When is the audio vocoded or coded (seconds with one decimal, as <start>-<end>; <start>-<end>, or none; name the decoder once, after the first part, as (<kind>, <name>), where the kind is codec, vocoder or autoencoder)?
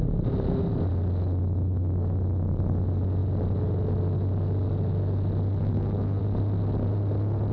5.6-6.2 (codec, SNAC)